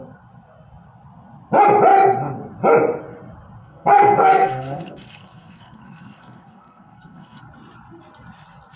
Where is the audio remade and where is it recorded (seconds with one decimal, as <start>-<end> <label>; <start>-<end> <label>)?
0.0-3.6 recorded; 3.6-7.4 remade; 7.4-8.8 recorded